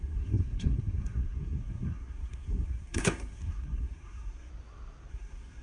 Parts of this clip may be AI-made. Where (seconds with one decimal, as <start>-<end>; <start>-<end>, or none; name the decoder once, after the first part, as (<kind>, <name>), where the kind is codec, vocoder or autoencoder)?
0.0-4.5 (codec, SNAC); 5.1-5.6